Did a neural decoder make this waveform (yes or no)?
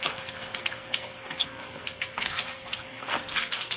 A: yes